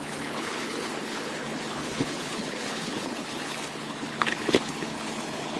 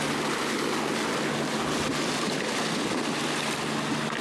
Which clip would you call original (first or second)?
second